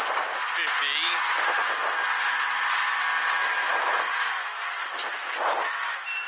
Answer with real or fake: real